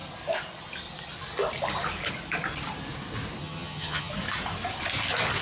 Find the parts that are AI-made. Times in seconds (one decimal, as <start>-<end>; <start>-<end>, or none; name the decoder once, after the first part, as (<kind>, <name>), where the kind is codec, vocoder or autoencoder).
3.4-4.1 (vocoder, HiFi-GAN)